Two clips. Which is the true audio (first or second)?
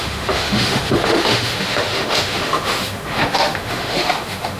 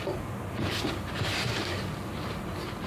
second